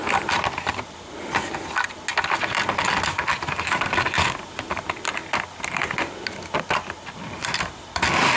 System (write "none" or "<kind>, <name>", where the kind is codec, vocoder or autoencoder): none